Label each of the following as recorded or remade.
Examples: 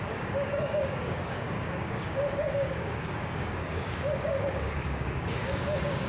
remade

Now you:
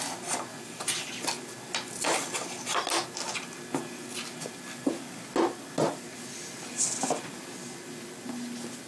recorded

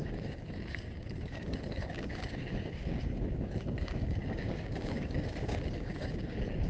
remade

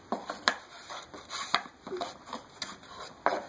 recorded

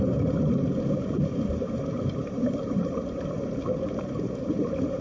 remade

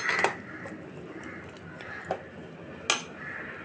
recorded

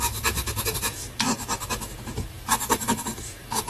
remade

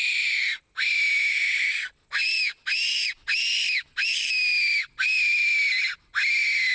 recorded